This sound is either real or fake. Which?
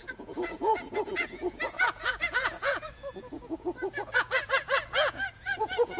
fake